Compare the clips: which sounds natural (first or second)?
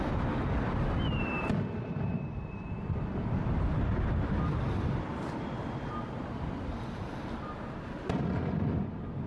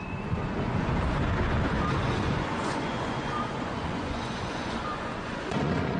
first